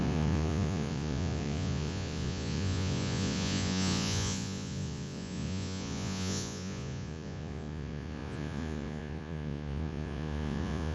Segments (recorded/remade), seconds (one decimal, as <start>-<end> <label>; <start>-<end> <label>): 0.0-10.9 remade